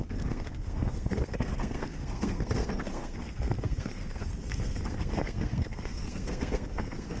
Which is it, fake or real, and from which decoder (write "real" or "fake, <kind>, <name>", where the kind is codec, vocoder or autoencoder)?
fake, codec, SNAC